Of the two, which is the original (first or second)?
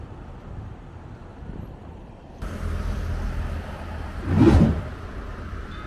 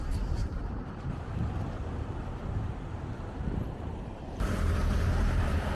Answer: first